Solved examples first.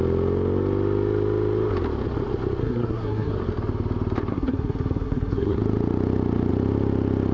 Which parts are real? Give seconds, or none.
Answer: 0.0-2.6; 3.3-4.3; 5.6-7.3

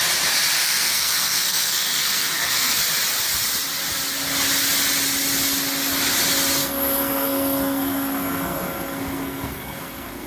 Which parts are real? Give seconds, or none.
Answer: 0.0-0.6; 2.8-6.6